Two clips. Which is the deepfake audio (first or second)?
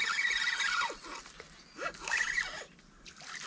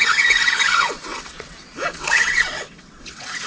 second